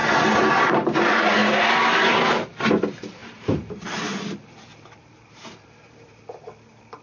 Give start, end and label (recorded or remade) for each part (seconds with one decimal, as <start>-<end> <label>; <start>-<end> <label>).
0.0-3.2 recorded; 3.2-6.2 remade; 6.2-7.0 recorded